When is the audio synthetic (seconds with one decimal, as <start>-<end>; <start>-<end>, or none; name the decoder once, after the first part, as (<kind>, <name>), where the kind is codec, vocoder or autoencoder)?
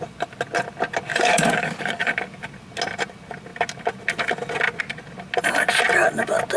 1.1-2.1 (codec, DAC)